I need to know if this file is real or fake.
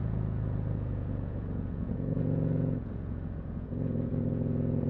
fake